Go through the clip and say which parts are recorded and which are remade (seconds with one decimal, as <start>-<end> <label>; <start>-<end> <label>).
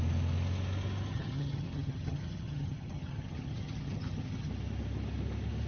0.0-1.1 recorded; 1.1-4.5 remade; 4.5-5.7 recorded